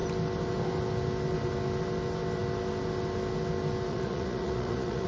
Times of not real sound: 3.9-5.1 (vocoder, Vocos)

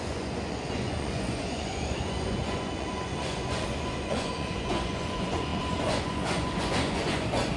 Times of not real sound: 0.0-7.6 (vocoder, Vocos)